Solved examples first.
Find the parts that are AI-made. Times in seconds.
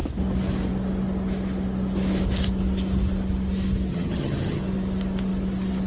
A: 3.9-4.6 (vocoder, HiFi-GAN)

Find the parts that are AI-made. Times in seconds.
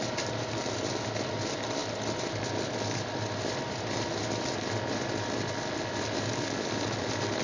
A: none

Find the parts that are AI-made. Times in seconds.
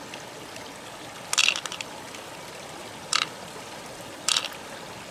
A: 1.4-4.5 (vocoder, BigVGAN v2)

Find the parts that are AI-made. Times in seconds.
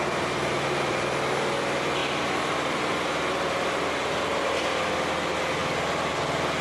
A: none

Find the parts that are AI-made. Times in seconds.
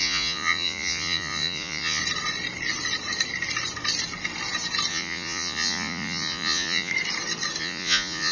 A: 0.0-2.0 (vocoder, Vocos); 4.9-6.9; 7.6-8.3